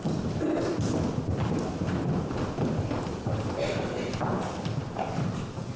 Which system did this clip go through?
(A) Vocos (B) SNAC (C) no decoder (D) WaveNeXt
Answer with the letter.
C